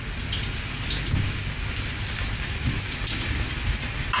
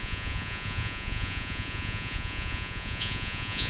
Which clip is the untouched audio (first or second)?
first